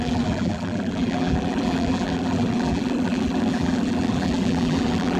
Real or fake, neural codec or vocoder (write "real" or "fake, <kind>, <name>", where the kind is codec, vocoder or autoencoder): fake, vocoder, BigVGAN v2